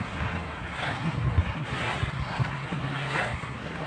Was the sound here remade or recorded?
remade